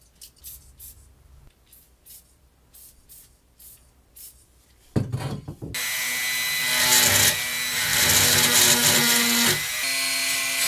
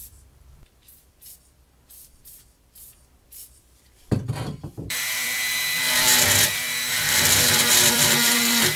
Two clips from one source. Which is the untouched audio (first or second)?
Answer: first